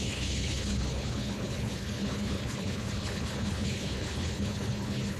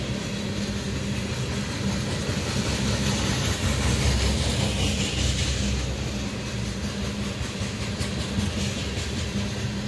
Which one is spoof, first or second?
first